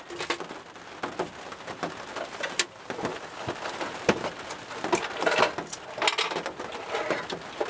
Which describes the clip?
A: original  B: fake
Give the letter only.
A